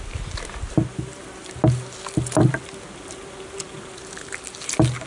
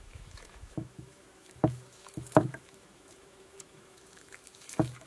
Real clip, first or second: first